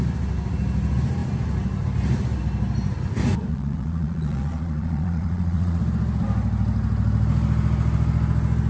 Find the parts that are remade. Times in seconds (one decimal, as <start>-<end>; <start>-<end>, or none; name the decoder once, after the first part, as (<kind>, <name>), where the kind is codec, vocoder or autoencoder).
3.5-5.8 (vocoder, Vocos)